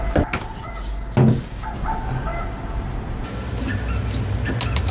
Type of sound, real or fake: real